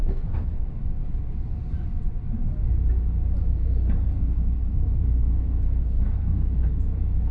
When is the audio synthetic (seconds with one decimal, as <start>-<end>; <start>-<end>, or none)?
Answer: 0.0-0.8; 3.5-6.8